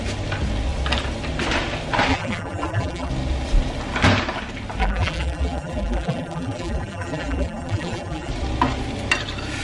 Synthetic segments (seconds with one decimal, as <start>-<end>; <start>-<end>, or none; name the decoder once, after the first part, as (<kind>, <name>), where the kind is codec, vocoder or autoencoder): 2.1-3.1 (vocoder, BigVGAN v2); 4.8-8.3